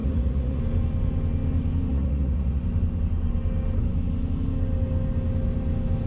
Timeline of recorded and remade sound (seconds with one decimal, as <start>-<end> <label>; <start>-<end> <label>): 0.0-0.6 remade; 0.6-1.9 recorded; 1.9-2.6 remade; 2.6-6.1 recorded